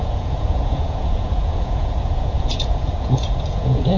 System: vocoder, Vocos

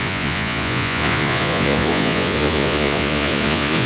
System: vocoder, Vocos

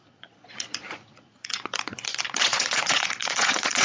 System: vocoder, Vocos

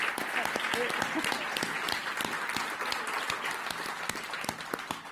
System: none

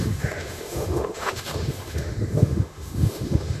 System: autoencoder, DAC-VAE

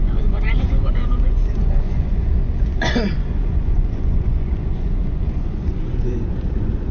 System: vocoder, Vocos